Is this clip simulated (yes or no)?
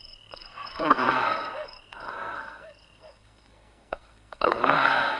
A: yes